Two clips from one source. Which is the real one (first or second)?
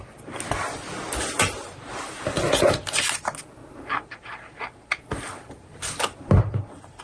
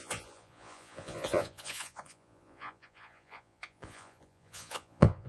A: first